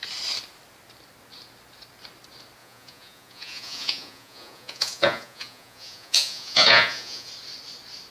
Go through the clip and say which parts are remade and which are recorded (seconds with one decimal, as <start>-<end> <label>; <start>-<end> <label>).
0.0-2.6 recorded; 2.6-7.3 remade; 7.3-8.1 recorded